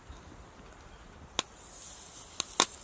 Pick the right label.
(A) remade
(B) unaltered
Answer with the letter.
B